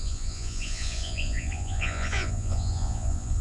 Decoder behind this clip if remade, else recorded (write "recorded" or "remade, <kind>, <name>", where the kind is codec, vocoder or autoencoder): remade, vocoder, Vocos